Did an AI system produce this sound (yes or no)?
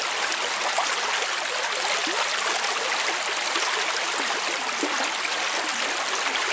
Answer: no